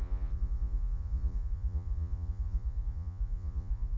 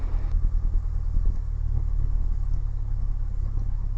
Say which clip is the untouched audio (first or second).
second